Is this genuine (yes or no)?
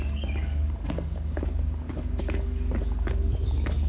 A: no